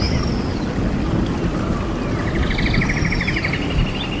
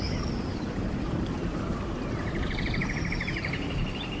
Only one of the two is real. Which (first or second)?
first